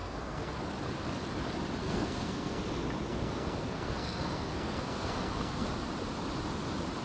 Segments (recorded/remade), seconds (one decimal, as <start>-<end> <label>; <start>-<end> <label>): 0.0-0.6 remade; 0.6-1.8 recorded; 1.8-2.6 remade; 2.6-3.1 recorded; 3.1-5.7 remade; 5.7-7.0 recorded